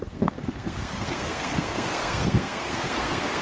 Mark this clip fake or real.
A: fake